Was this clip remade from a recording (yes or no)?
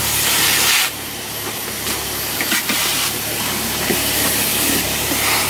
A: yes